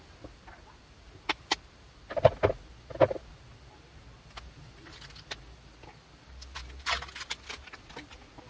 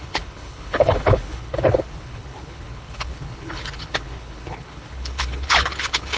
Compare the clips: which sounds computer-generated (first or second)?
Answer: second